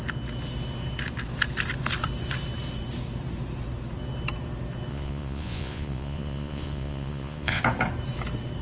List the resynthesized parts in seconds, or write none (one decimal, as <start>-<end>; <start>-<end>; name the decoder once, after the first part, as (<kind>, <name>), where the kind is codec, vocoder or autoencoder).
4.9-7.6 (vocoder, Vocos)